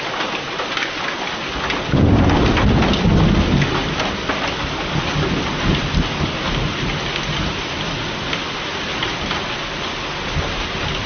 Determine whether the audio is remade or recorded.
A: recorded